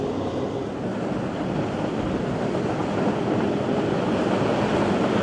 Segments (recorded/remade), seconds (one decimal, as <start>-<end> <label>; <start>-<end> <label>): 0.0-5.2 recorded